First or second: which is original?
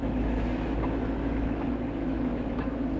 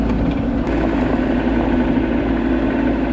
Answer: second